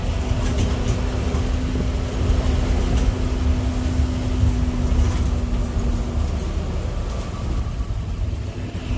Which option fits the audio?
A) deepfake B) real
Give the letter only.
B